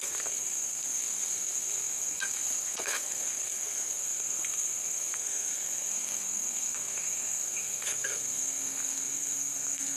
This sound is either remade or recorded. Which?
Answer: remade